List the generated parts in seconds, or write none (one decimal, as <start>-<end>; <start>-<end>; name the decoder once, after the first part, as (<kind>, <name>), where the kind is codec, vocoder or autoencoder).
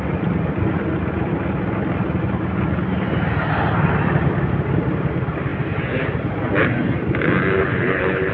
7.6-8.3 (codec, HILCodec)